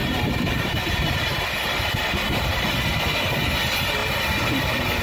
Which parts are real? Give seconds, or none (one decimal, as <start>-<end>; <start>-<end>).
3.0-5.0